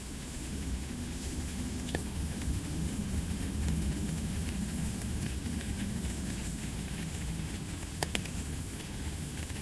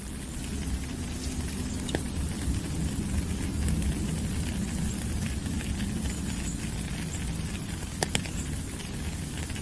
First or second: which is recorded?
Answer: second